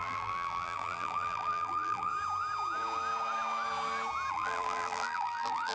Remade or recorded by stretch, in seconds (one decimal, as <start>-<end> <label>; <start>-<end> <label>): 0.0-2.1 remade; 2.1-4.3 recorded; 4.3-5.7 remade